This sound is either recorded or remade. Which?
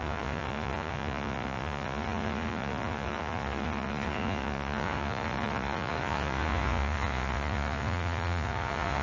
remade